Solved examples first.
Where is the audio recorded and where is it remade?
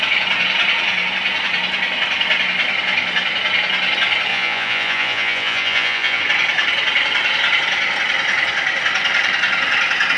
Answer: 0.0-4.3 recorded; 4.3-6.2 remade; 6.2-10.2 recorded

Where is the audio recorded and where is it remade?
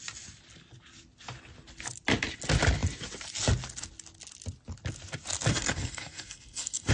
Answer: 0.0-5.5 recorded; 5.5-6.9 remade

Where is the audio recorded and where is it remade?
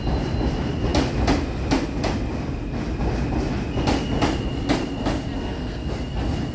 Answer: 0.0-5.4 recorded; 5.4-5.9 remade; 5.9-6.5 recorded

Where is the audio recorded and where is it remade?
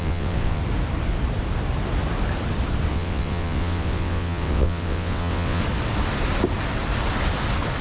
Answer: 0.0-0.6 remade; 0.6-2.9 recorded; 2.9-5.6 remade; 5.6-7.8 recorded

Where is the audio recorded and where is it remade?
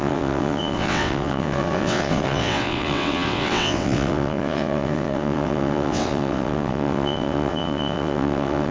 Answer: 0.0-8.7 remade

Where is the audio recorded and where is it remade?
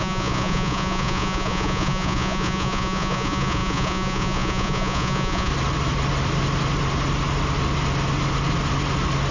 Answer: 0.0-5.5 remade; 5.5-9.3 recorded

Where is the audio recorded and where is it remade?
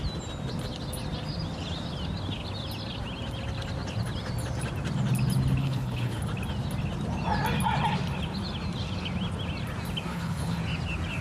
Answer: 0.0-5.6 recorded; 5.6-6.2 remade; 6.2-10.1 recorded; 10.1-10.6 remade; 10.6-11.2 recorded